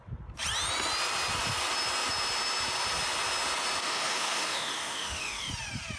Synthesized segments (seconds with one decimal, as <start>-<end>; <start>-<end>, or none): 3.8-5.5